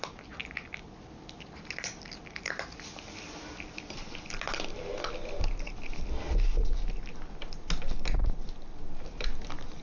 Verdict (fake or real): real